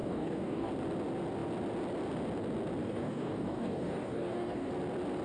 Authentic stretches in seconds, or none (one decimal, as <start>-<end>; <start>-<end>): 0.7-2.8; 4.7-5.2